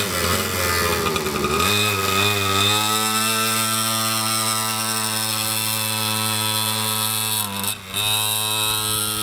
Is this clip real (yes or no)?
yes